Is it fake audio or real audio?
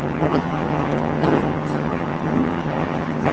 fake